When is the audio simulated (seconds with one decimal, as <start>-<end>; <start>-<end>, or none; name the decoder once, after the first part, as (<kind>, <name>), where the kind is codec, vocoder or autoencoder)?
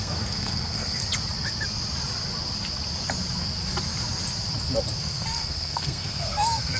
0.0-1.0 (codec, SNAC); 5.0-6.8